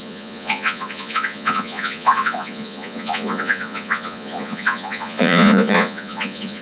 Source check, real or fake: fake